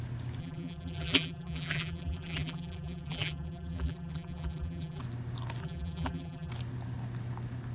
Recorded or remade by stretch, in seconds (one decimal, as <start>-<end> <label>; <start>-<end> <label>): 0.0-0.4 recorded; 0.4-5.0 remade; 5.0-5.6 recorded; 5.6-6.5 remade; 6.5-7.7 recorded